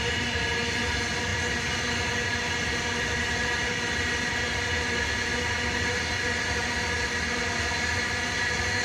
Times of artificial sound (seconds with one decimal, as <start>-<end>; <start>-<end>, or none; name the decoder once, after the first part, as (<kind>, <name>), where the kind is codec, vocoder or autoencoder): none